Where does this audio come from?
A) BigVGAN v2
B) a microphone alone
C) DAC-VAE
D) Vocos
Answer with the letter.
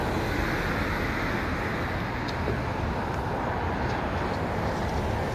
B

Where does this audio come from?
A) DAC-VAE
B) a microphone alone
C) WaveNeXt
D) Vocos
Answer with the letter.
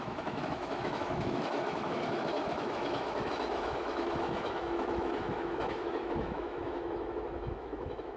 A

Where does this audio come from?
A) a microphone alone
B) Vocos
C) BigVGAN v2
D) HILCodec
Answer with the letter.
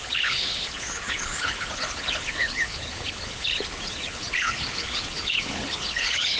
D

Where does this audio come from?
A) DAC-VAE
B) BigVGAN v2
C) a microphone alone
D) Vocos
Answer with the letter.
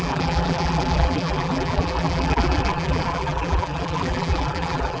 B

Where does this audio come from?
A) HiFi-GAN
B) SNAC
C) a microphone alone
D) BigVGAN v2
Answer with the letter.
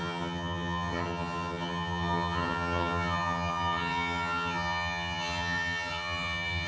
A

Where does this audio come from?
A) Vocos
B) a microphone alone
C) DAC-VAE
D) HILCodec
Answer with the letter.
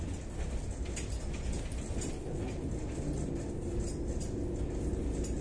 B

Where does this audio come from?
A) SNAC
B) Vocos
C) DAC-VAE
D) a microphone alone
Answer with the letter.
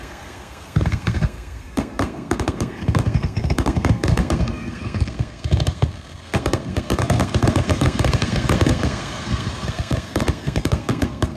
A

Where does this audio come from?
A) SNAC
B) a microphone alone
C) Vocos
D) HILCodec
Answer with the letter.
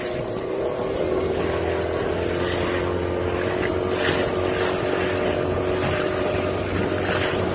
B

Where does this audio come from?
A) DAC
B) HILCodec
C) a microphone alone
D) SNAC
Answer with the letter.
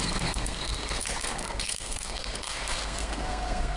D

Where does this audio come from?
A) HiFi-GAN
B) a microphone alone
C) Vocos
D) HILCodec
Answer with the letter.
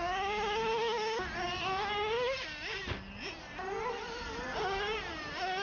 B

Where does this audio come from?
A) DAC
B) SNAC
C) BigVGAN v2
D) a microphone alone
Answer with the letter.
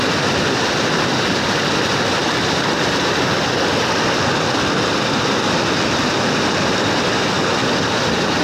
D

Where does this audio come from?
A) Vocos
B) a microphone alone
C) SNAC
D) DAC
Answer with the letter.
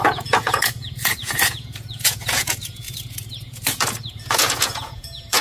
A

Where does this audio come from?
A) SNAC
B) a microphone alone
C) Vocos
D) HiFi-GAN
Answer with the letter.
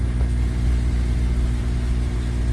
B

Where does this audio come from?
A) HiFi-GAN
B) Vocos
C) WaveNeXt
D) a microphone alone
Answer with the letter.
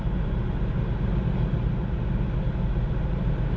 D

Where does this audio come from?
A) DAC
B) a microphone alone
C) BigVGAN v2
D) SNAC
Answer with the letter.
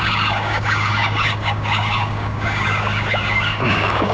A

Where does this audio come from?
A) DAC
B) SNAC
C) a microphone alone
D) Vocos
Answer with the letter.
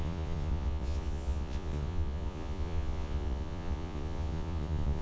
D